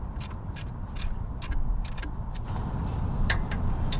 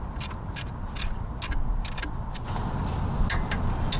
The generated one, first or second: first